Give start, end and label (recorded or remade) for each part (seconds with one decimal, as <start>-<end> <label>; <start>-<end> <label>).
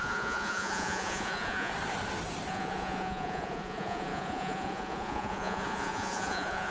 0.0-1.7 remade; 1.7-2.5 recorded; 2.5-6.7 remade